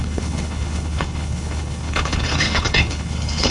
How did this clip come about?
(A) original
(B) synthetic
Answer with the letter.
B